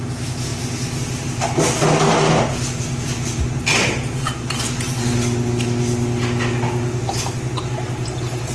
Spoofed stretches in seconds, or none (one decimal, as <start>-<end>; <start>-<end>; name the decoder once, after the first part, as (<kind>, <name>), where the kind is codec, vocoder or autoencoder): 0.5-1.2 (vocoder, BigVGAN v2)